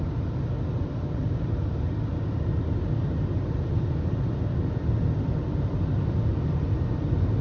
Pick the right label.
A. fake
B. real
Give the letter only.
B